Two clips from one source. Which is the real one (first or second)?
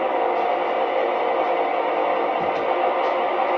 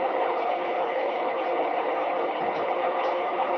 first